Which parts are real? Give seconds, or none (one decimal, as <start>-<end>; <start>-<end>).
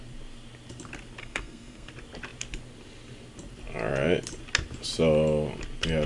0.0-1.2; 1.9-6.1